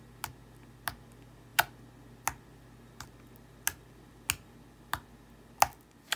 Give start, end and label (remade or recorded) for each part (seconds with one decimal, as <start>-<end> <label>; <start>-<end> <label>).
0.0-6.2 recorded